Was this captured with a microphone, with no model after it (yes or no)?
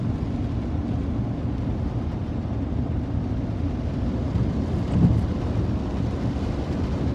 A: yes